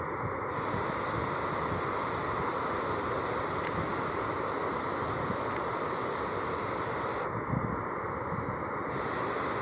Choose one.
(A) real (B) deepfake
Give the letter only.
A